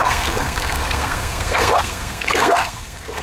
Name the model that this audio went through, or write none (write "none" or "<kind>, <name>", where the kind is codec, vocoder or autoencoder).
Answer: codec, SNAC